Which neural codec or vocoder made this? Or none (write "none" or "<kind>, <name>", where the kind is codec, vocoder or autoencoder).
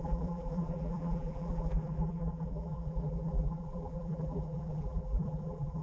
vocoder, BigVGAN v2